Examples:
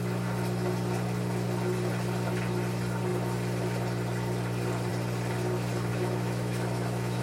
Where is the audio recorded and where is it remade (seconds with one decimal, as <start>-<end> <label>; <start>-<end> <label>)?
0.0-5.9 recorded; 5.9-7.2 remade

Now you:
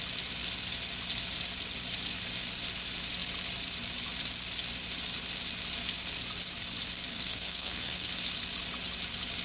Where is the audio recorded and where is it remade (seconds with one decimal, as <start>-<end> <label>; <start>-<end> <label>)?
0.0-7.1 recorded; 7.1-8.1 remade; 8.1-9.4 recorded

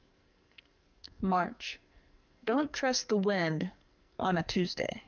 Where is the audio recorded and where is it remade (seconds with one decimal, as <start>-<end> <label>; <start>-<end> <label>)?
0.0-5.1 remade

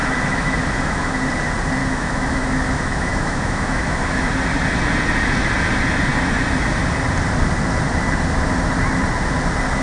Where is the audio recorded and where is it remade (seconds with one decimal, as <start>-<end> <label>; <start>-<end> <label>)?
0.0-1.2 remade; 1.2-1.8 recorded; 1.8-4.3 remade; 4.3-9.8 recorded